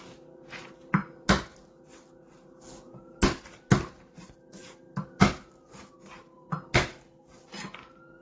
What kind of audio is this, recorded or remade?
recorded